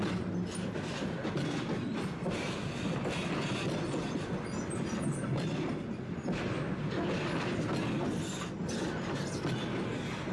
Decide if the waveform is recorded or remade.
recorded